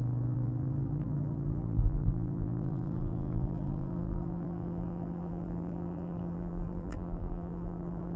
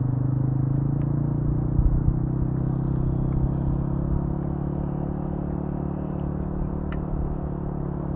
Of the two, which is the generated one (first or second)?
first